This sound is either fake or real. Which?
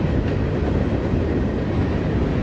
real